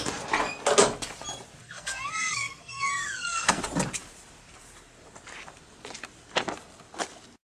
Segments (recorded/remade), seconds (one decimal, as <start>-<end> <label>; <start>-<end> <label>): 0.0-1.6 recorded; 1.6-3.6 remade; 3.6-7.5 recorded